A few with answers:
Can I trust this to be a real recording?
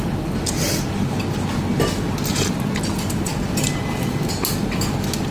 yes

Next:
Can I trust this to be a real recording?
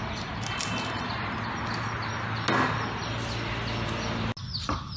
yes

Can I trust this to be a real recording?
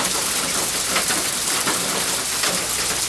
yes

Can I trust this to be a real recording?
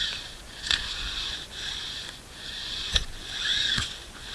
no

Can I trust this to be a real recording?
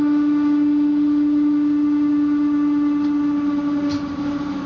yes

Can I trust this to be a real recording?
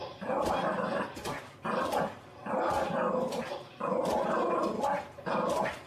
yes